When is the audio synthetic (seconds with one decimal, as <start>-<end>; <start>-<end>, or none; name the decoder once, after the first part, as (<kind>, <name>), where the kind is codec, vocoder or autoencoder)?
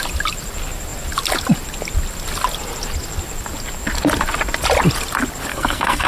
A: 5.5-6.1 (codec, SNAC)